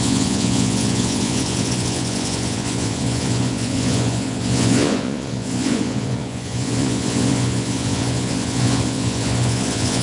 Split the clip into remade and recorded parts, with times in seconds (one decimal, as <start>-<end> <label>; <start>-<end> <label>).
0.0-10.0 remade